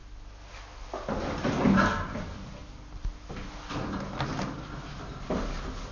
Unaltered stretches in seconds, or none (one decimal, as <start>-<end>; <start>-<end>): 0.0-5.9